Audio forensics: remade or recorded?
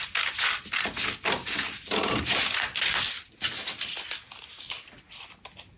recorded